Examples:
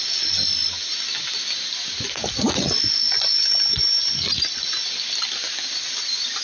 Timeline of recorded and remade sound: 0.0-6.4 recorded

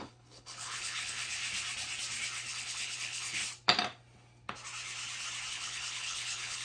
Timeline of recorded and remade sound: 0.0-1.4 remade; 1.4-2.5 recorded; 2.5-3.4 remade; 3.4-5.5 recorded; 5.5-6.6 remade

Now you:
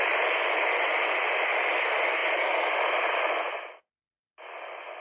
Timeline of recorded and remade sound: 0.0-5.0 recorded

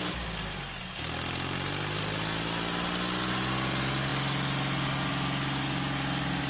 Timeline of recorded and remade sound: 0.0-6.5 recorded